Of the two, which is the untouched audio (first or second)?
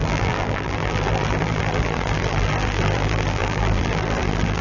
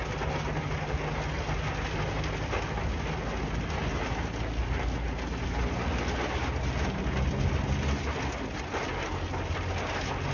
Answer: second